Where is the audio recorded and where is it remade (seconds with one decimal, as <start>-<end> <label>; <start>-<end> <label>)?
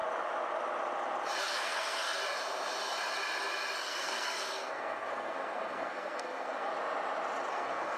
0.0-1.4 recorded; 1.4-2.2 remade; 2.2-3.8 recorded; 3.8-6.7 remade; 6.7-7.5 recorded; 7.5-8.0 remade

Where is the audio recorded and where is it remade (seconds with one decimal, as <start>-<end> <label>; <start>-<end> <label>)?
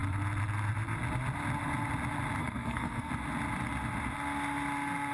0.0-2.4 recorded; 2.4-3.1 remade; 3.1-5.1 recorded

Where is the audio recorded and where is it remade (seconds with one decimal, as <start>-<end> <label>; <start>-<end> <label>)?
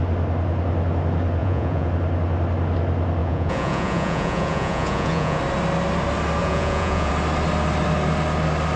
0.0-1.4 recorded; 1.4-1.9 remade; 1.9-3.2 recorded; 3.2-5.4 remade; 5.4-6.4 recorded; 6.4-7.1 remade; 7.1-8.8 recorded